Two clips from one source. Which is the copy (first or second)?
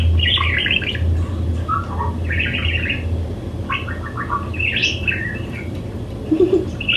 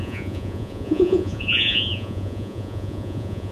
second